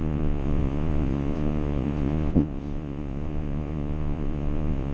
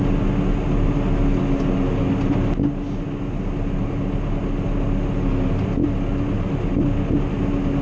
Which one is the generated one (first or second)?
first